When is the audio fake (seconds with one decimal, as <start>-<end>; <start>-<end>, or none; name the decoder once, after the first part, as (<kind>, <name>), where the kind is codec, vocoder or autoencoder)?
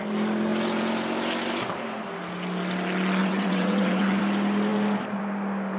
3.2-4.2 (vocoder, WaveNeXt)